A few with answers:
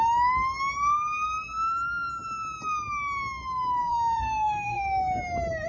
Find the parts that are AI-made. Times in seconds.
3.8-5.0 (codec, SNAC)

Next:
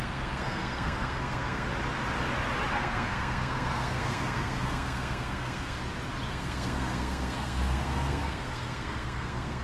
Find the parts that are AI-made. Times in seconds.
0.0-1.7 (codec, SNAC); 2.7-5.8; 6.3-9.6

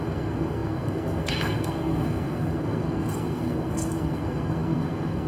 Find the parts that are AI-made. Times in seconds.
0.0-5.3 (codec, SNAC)

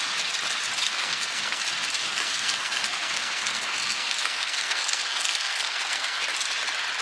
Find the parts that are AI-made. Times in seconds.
0.8-1.6 (codec, SNAC); 2.0-6.2